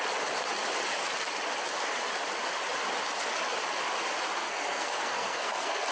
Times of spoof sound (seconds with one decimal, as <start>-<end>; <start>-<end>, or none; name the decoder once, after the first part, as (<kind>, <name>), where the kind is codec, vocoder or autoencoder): 4.4-5.9 (codec, SNAC)